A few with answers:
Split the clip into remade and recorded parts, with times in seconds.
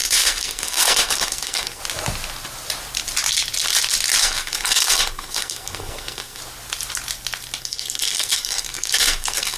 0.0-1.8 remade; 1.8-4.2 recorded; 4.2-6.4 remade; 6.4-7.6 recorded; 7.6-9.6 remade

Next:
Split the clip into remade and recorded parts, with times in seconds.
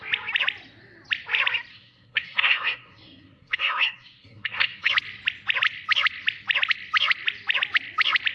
0.0-1.7 recorded; 1.7-4.9 remade; 4.9-8.3 recorded